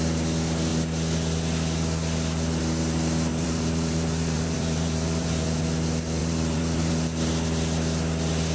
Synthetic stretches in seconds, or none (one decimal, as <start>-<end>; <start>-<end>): 3.3-5.6; 6.2-6.9